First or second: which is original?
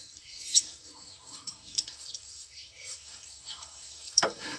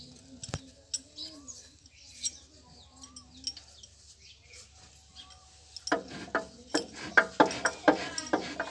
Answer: second